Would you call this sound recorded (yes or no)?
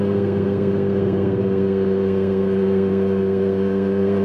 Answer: no